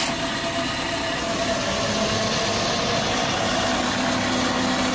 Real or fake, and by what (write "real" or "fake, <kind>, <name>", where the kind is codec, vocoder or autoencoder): real